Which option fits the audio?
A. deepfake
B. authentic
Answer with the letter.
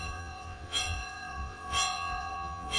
A